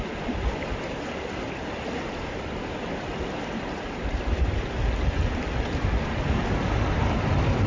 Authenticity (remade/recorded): remade